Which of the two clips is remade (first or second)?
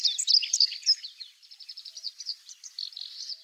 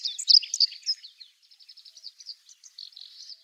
first